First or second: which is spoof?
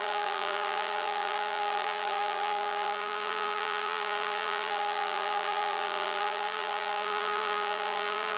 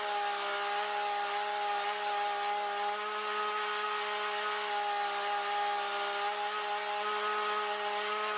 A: first